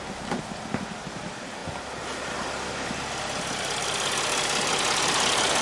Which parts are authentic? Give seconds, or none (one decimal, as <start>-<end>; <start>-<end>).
0.0-5.6